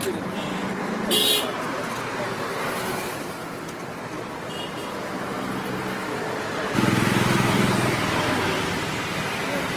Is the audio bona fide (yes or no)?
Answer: yes